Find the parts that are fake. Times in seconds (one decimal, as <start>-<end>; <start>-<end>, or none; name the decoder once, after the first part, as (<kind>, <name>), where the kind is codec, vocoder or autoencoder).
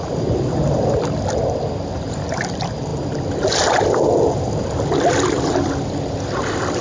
none